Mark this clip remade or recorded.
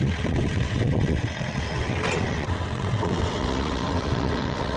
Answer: remade